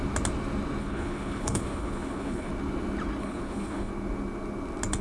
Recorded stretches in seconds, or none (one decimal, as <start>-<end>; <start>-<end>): 0.0-0.8; 2.5-3.2; 3.9-5.0